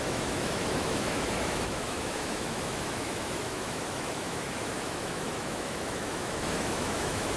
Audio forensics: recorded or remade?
remade